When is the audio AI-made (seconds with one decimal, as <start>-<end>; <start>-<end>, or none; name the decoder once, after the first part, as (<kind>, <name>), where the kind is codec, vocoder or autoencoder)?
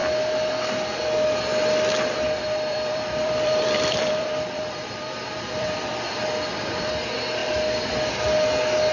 2.7-6.9 (vocoder, BigVGAN v2); 7.4-8.1